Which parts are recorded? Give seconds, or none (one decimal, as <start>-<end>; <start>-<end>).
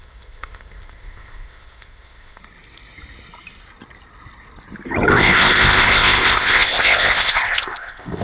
2.4-5.1